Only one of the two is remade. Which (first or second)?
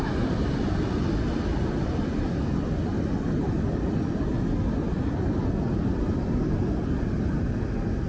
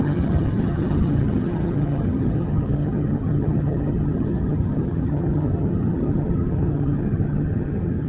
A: second